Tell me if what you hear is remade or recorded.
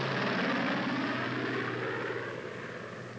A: recorded